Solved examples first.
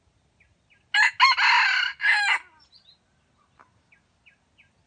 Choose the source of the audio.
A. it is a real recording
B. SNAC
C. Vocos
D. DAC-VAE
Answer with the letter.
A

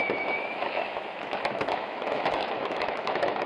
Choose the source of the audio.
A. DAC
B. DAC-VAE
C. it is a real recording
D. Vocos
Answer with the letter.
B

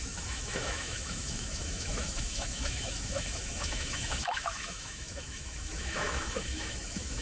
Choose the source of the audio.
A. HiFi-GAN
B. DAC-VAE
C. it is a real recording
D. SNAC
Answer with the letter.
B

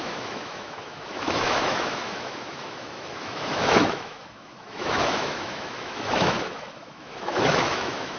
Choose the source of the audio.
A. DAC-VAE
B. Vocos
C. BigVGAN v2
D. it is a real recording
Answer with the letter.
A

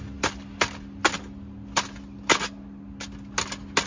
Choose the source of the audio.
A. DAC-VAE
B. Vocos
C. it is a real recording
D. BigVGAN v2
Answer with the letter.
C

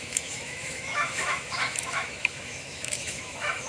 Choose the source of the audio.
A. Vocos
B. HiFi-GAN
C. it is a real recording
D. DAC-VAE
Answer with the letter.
D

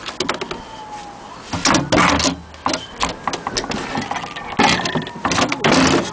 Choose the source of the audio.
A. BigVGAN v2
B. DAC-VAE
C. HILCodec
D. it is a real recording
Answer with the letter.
D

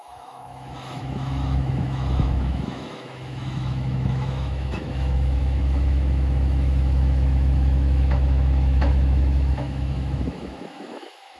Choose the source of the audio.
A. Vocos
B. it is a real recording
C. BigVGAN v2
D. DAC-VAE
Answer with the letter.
D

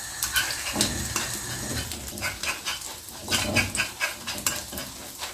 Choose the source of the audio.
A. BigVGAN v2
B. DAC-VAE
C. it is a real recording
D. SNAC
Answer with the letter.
C